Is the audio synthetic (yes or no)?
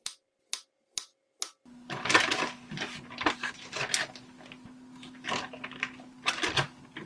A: no